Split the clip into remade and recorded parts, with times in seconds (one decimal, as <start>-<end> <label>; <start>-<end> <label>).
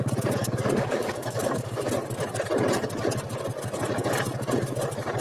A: 0.0-0.4 recorded; 0.4-1.9 remade; 1.9-5.2 recorded